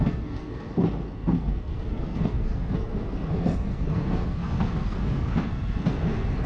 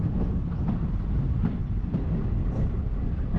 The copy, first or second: first